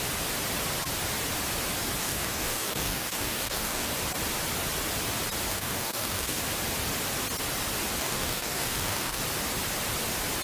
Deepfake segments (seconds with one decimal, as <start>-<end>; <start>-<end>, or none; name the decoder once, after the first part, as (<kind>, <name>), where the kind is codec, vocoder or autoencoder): 2.0-3.9 (codec, DAC); 5.5-6.4; 8.0-9.2